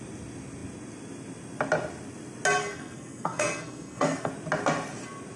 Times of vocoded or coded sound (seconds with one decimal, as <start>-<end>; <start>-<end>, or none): 2.6-4.3